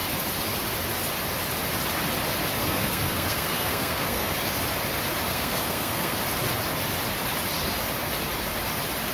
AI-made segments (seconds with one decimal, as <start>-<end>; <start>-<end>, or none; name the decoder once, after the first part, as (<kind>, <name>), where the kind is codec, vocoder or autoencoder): 2.6-4.3 (codec, SNAC); 5.3-6.2